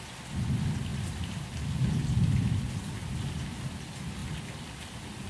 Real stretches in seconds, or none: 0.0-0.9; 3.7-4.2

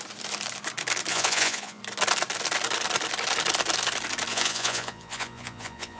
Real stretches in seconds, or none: 0.0-1.1; 1.8-4.3

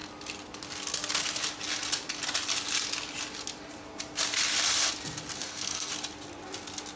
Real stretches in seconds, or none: 0.0-5.4; 5.9-7.0

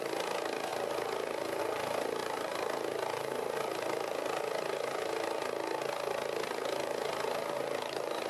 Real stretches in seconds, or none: 0.0-8.3